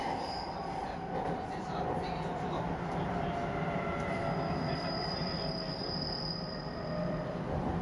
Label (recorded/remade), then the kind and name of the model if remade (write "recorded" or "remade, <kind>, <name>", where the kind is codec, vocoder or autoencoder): remade, vocoder, BigVGAN v2